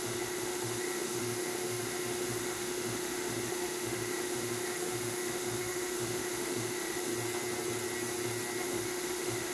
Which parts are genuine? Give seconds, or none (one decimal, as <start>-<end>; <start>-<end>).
7.1-8.6